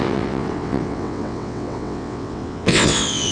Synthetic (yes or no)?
yes